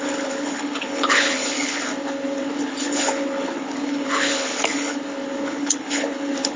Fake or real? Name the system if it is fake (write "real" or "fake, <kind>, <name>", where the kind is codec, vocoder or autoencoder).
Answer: fake, codec, HILCodec